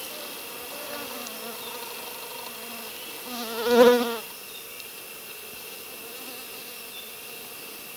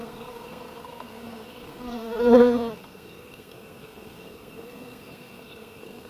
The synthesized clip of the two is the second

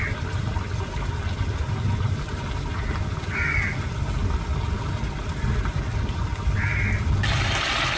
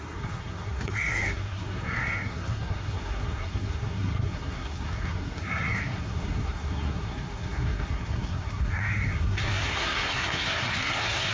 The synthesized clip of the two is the second